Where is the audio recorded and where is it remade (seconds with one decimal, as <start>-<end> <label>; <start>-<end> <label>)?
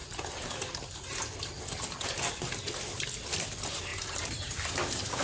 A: 0.0-3.9 recorded; 3.9-5.2 remade